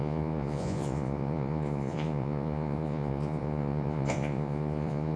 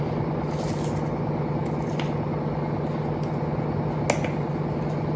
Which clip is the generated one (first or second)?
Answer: first